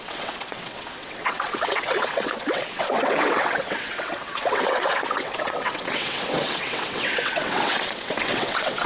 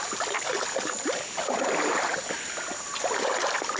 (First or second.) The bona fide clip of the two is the second